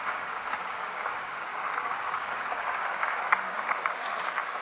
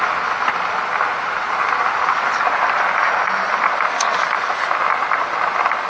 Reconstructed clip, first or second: first